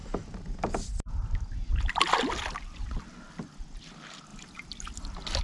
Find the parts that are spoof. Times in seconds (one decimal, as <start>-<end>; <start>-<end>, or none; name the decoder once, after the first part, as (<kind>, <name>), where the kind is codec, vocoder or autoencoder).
none